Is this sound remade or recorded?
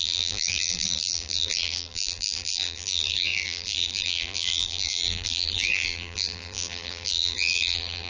remade